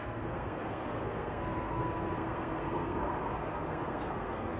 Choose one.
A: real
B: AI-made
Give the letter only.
B